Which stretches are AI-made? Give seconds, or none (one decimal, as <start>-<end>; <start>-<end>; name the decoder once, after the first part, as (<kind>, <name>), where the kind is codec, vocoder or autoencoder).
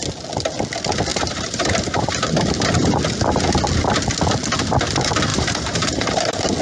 1.1-3.0 (vocoder, BigVGAN v2); 5.3-6.6